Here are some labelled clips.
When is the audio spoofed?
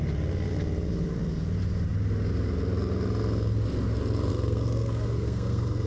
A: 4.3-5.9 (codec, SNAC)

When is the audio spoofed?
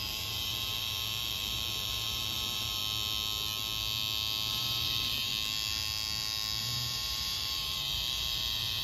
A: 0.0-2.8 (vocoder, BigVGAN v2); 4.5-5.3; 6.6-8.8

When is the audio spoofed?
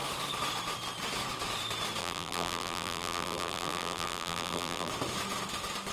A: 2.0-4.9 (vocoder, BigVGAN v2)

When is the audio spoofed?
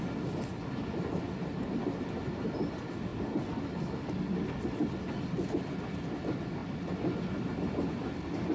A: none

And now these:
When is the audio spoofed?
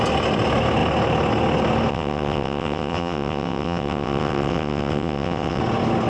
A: 1.9-5.6 (vocoder, WaveNeXt)